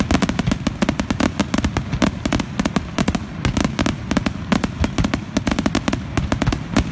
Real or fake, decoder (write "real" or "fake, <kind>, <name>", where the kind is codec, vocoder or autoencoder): real